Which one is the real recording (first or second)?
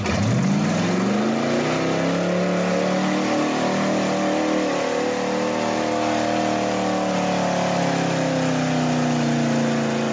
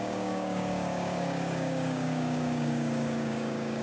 first